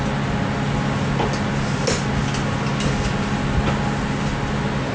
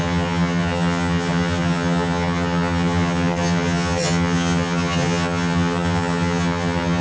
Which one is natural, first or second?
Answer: first